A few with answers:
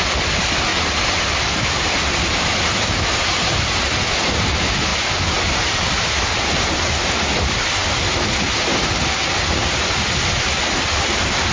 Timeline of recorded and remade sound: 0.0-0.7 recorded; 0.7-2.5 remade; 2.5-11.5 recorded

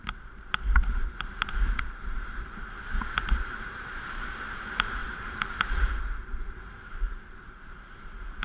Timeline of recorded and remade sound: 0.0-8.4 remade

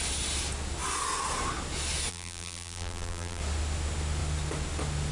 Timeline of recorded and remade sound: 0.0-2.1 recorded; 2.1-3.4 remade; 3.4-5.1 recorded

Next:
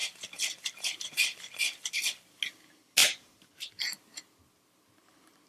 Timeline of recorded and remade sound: 0.0-3.0 recorded; 3.0-3.7 remade; 3.7-5.5 recorded

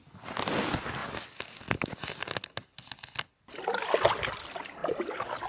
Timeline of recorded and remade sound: 0.0-4.8 recorded; 4.8-5.5 remade

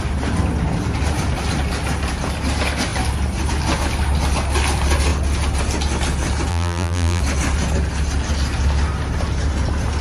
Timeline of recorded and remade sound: 0.0-6.5 recorded; 6.5-7.2 remade; 7.2-10.0 recorded

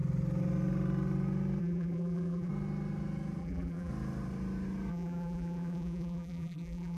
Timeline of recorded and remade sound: 0.0-1.6 recorded; 1.6-2.5 remade; 2.5-3.4 recorded; 3.4-3.9 remade; 3.9-4.9 recorded; 4.9-7.0 remade